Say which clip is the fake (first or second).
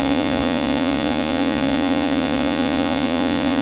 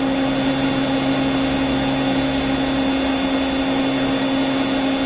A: first